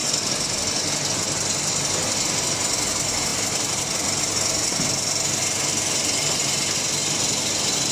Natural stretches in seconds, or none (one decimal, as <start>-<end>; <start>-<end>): 0.0-3.3; 4.2-7.9